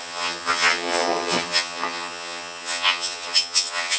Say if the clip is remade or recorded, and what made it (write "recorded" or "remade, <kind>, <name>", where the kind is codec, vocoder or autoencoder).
remade, vocoder, HiFi-GAN